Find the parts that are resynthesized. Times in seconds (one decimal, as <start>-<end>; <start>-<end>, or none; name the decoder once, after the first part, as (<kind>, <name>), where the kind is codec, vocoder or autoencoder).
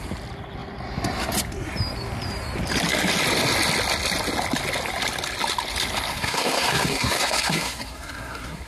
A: 6.1-8.7 (codec, SNAC)